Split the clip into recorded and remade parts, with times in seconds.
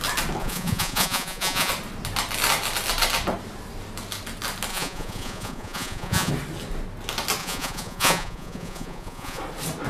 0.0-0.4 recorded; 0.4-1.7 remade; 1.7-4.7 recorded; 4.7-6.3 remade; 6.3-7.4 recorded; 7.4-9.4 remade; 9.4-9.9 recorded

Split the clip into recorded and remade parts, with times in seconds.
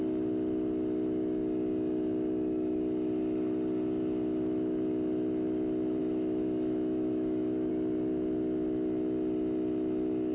0.0-6.0 recorded; 6.0-7.7 remade; 7.7-10.3 recorded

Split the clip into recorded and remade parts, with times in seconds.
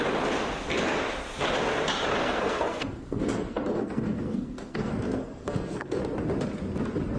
0.0-2.2 recorded; 2.2-6.0 remade; 6.0-7.2 recorded